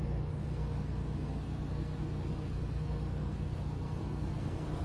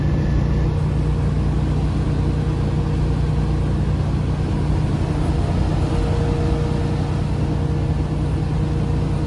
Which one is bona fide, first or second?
second